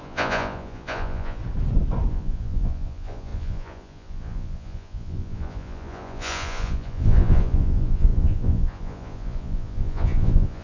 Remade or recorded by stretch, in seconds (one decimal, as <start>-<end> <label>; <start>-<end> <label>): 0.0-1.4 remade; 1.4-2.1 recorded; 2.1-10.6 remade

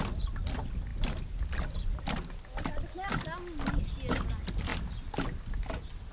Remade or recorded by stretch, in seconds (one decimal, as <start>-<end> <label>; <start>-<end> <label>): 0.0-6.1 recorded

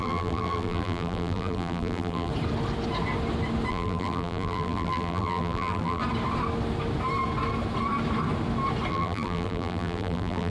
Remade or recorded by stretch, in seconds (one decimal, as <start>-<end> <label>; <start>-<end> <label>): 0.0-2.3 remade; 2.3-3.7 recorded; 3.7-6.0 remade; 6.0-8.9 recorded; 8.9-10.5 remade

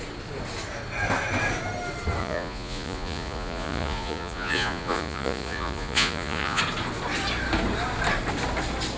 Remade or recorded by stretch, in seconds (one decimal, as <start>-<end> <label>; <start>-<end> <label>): 0.0-2.2 recorded; 2.2-6.6 remade; 6.6-9.0 recorded